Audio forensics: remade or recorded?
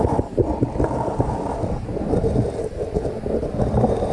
recorded